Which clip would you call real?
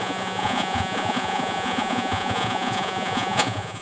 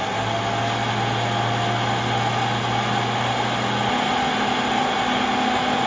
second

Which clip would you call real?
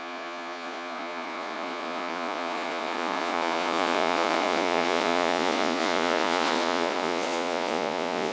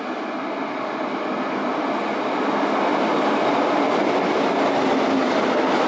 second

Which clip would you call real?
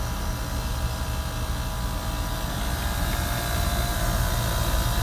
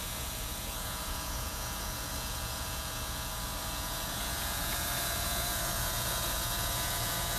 first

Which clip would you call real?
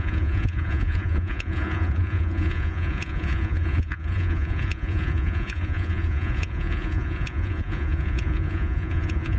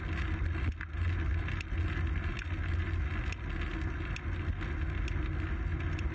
second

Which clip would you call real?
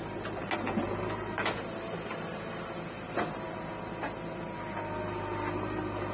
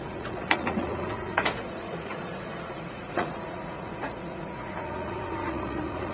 first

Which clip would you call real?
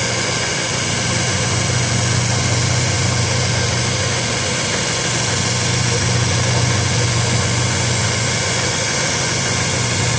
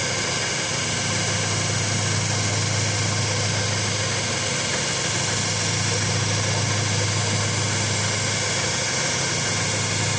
second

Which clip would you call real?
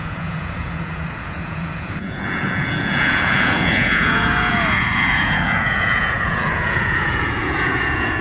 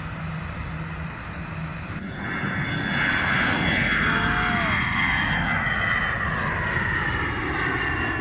second